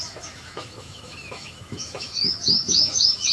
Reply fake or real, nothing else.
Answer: fake